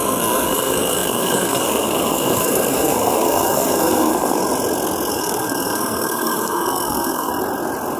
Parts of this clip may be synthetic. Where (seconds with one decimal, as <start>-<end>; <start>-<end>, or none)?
0.0-4.4; 5.1-7.3